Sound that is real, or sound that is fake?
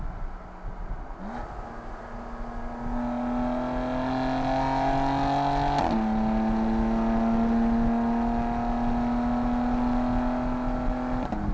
real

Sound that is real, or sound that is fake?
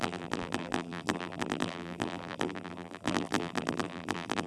fake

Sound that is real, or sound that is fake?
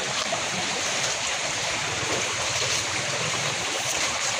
fake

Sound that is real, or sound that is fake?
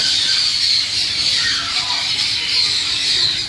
real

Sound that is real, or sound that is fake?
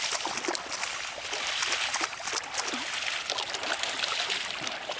real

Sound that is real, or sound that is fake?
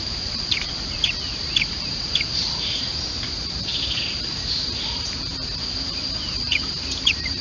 fake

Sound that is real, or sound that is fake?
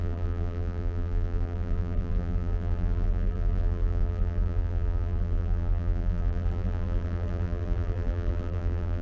fake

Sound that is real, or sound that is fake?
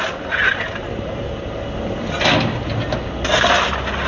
real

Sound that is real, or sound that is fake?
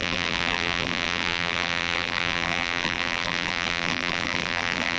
fake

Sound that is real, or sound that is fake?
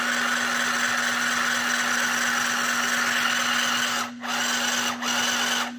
real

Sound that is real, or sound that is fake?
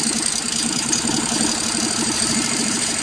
fake